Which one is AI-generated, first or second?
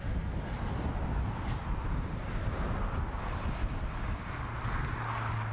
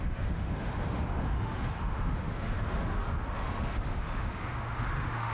second